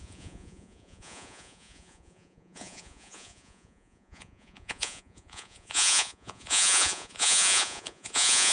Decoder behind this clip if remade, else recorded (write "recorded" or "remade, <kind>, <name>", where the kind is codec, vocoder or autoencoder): remade, vocoder, Vocos